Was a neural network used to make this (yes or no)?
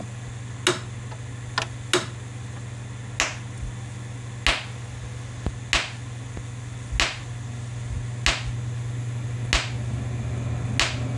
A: no